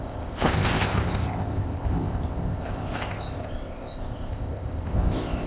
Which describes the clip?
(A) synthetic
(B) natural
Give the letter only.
A